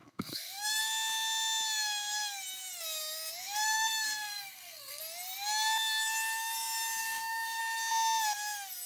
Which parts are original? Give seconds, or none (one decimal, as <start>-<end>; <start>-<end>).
0.8-3.4; 5.0-7.0; 7.6-8.9